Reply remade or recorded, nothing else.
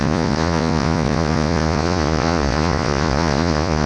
remade